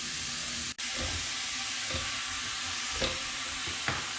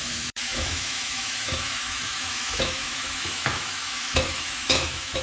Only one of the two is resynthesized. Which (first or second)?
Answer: second